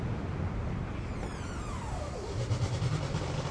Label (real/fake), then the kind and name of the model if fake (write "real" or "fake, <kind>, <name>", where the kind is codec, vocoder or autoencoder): real